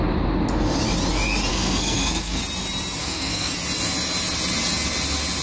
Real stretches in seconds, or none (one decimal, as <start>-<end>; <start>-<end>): 0.0-1.5; 2.4-3.0; 3.5-5.4

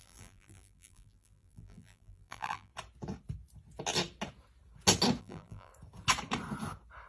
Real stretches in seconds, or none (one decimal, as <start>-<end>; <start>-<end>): 2.7-5.2; 5.7-7.1

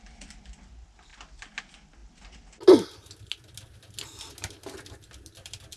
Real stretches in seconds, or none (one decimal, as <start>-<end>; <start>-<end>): 0.0-5.8

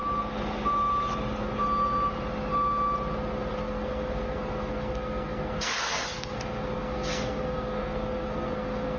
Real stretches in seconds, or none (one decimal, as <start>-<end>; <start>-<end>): 0.0-3.6

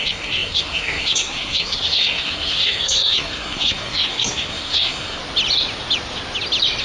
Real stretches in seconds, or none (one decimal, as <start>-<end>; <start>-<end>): 5.2-6.8